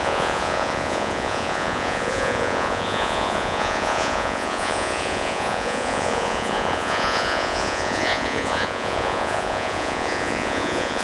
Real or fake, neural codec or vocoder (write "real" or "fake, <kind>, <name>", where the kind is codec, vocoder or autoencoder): fake, vocoder, Vocos